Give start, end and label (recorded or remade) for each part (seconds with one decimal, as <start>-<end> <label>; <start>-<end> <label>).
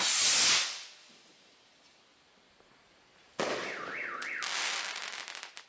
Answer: 0.0-5.7 recorded